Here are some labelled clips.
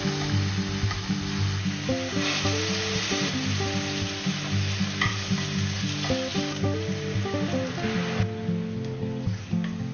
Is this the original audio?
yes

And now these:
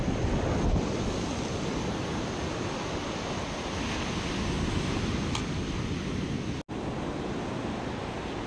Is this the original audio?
yes